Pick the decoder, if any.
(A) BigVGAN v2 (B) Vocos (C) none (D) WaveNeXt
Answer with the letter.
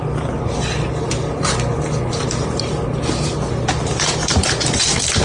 C